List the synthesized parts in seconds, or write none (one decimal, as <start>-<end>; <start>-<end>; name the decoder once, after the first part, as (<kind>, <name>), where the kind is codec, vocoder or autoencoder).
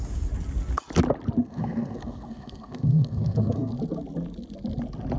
1.4-3.7 (codec, SNAC)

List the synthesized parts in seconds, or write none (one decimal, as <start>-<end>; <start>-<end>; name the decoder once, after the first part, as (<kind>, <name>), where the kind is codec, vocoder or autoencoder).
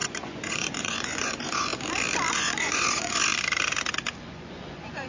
0.0-1.7 (vocoder, Vocos); 2.3-3.3; 4.2-5.1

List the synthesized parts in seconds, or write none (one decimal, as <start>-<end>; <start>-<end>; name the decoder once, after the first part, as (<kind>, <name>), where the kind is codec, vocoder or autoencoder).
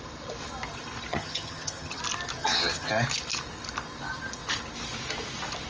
1.1-2.0 (vocoder, HiFi-GAN); 2.4-2.9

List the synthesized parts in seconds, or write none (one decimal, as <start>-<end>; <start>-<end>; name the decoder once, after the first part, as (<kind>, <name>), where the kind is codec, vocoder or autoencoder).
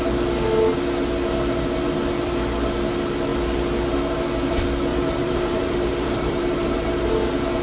4.9-7.1 (vocoder, BigVGAN v2)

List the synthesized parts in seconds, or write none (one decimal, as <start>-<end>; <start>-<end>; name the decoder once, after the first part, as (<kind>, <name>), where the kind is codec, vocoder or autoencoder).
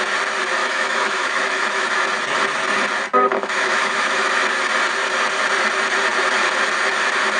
0.6-1.9 (autoencoder, DAC-VAE); 3.3-4.3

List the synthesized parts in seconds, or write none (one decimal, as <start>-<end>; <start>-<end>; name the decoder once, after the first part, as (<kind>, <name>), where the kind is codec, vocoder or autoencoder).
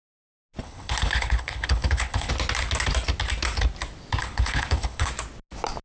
0.6-2.3 (codec, HILCodec); 4.2-5.1